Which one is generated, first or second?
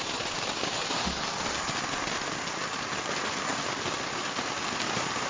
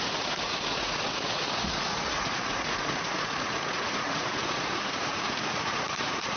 second